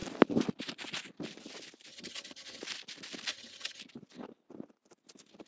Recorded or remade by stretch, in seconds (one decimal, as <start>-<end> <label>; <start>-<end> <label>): 0.0-1.9 recorded; 1.9-2.6 remade; 2.6-3.3 recorded; 3.3-3.8 remade; 3.8-5.5 recorded